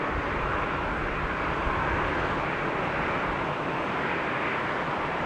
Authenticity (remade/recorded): recorded